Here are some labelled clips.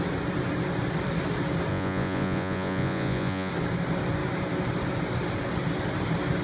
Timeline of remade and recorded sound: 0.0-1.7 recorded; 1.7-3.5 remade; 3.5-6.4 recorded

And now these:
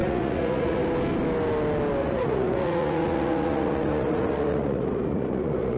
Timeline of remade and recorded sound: 0.0-0.8 remade; 0.8-2.0 recorded; 2.0-5.8 remade

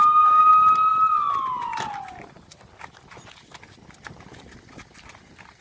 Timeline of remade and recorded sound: 0.0-5.6 recorded

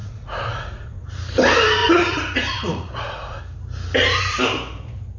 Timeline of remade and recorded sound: 0.0-1.2 remade; 1.2-1.8 recorded; 1.8-3.4 remade; 3.4-5.2 recorded

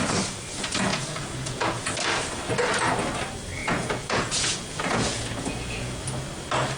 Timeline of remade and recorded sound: 0.0-0.9 recorded; 0.9-1.9 remade; 1.9-3.6 recorded; 3.6-6.0 remade; 6.0-6.8 recorded

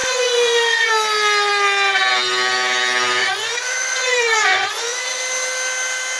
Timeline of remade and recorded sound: 0.0-0.9 remade; 0.9-3.2 recorded; 3.2-5.2 remade; 5.2-6.2 recorded